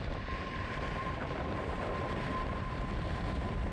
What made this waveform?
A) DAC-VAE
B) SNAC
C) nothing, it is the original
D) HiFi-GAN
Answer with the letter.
C